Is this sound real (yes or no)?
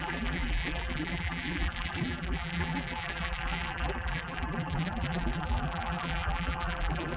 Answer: no